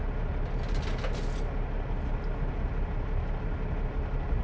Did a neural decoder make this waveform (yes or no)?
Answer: no